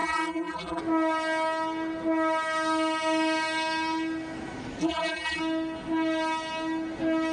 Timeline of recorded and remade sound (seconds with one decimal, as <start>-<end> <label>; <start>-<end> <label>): 0.0-0.8 remade; 0.8-4.8 recorded; 4.8-5.4 remade; 5.4-7.3 recorded